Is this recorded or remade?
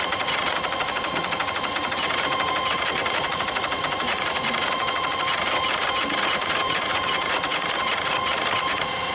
remade